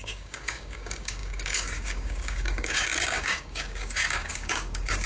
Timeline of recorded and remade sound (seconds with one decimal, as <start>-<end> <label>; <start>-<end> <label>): 0.0-5.1 remade